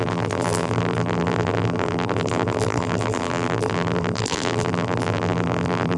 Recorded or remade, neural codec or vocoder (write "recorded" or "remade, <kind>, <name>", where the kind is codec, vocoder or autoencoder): remade, vocoder, BigVGAN v2